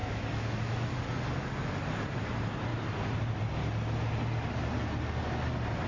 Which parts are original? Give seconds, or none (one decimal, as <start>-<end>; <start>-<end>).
0.9-5.9